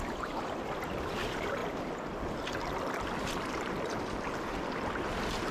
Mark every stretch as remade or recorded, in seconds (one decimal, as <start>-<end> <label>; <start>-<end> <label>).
0.0-5.5 recorded